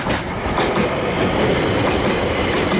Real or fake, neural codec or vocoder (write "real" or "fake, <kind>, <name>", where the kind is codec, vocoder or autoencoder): real